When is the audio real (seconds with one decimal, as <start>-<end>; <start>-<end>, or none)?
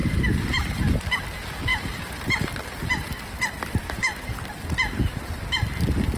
0.8-1.7; 5.4-6.2